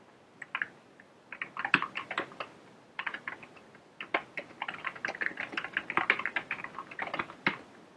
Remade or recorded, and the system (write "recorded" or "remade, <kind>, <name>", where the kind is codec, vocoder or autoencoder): recorded